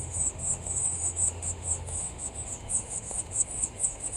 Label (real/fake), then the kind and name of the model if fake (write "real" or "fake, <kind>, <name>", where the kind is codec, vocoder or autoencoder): fake, autoencoder, DAC-VAE